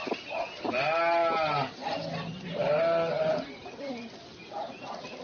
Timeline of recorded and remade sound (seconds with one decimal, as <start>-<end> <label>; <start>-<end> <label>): 0.0-5.2 recorded